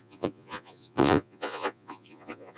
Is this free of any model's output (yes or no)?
no